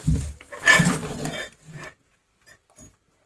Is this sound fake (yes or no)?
no